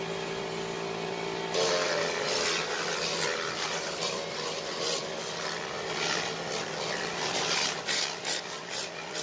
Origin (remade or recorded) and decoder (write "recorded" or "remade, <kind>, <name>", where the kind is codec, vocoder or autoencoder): recorded